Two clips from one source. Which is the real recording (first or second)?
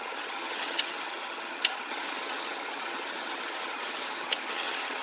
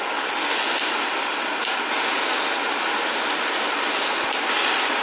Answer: second